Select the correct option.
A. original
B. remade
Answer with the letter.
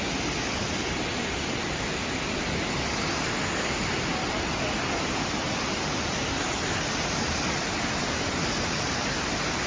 A